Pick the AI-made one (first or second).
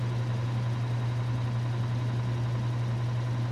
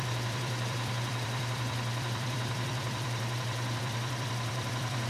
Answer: second